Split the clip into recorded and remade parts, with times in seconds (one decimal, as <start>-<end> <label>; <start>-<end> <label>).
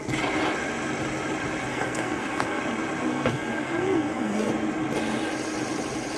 0.0-1.7 recorded; 1.7-2.6 remade; 2.6-3.1 recorded; 3.1-4.5 remade; 4.5-6.2 recorded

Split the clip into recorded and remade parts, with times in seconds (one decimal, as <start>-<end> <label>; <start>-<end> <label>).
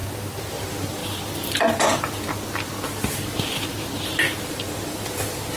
0.0-0.5 recorded; 0.5-1.0 remade; 1.0-4.4 recorded; 4.4-5.6 remade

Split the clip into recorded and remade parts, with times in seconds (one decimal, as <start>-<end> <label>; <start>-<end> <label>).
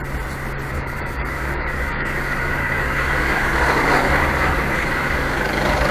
0.0-0.7 recorded; 0.7-5.9 remade